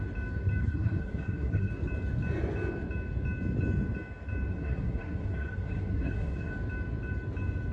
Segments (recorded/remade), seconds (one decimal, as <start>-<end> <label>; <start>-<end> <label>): 0.0-0.6 recorded; 0.6-1.7 remade; 1.7-4.5 recorded; 4.5-6.5 remade; 6.5-7.7 recorded